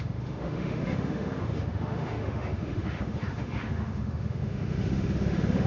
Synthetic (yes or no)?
yes